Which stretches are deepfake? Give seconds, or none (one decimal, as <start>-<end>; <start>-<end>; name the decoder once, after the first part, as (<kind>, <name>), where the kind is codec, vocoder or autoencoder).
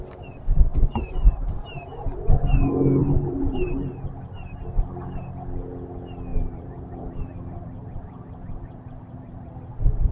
0.7-2.1 (vocoder, BigVGAN v2); 3.0-4.2; 6.3-9.5